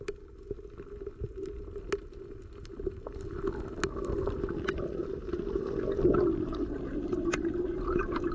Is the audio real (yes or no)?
yes